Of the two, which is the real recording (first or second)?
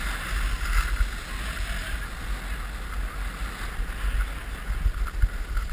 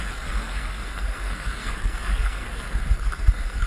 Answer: first